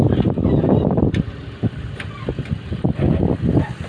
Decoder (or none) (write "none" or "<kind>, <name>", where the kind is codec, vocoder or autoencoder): none